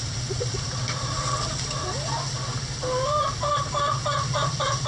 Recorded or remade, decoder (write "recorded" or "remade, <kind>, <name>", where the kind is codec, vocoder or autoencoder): recorded